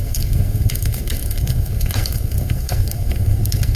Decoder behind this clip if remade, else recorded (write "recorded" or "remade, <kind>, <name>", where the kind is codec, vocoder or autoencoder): remade, codec, SNAC